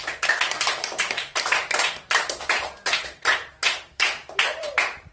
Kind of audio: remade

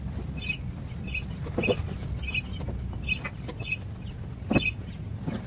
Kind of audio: recorded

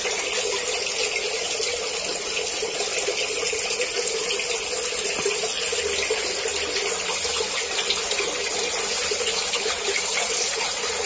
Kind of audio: recorded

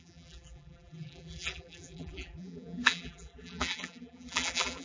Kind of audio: remade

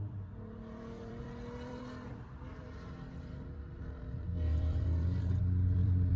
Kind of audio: remade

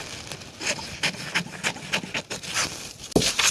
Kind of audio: recorded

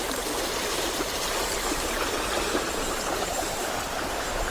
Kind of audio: remade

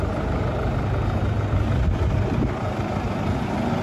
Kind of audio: recorded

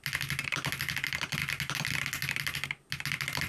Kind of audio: recorded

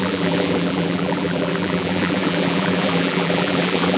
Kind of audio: remade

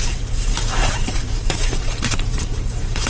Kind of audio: remade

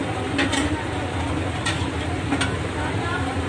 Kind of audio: remade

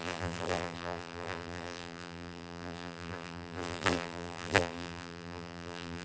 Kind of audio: remade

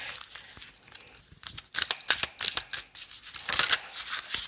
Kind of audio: recorded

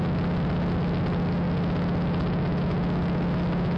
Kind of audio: recorded